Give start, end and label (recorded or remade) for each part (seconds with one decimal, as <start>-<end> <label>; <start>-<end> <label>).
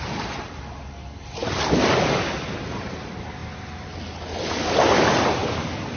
0.0-6.0 recorded